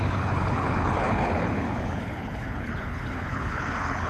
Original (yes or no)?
no